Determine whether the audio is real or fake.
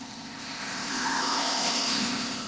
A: fake